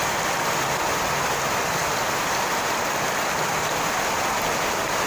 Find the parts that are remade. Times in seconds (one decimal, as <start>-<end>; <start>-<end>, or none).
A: none